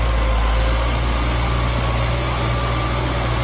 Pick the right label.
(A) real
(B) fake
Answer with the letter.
A